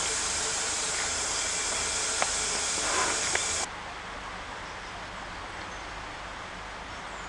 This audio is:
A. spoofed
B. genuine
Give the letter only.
B